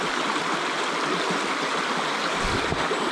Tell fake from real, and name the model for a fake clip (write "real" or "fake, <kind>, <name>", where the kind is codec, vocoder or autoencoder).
real